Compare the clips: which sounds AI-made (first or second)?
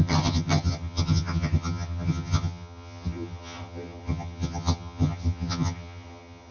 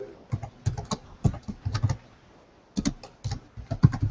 first